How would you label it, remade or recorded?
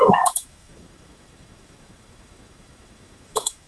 remade